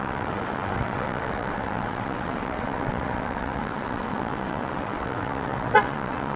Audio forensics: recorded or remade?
remade